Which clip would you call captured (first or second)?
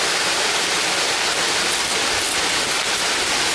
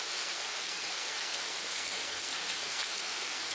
first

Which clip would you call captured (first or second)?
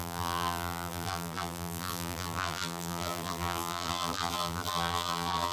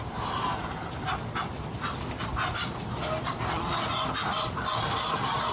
second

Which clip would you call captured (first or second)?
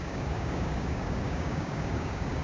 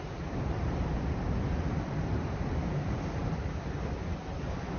second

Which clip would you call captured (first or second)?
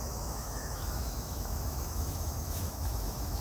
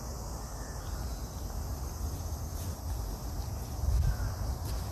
second